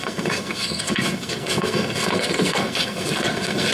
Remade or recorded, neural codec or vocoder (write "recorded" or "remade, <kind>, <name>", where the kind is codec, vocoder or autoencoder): remade, codec, SNAC